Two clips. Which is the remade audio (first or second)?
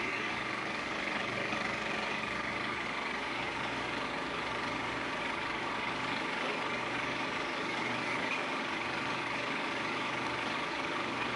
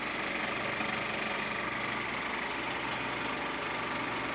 first